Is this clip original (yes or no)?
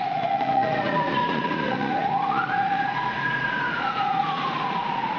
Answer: no